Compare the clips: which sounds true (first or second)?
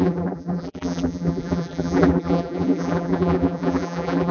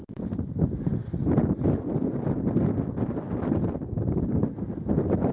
second